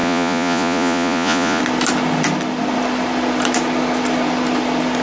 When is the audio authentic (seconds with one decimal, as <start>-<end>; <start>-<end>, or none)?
1.6-5.0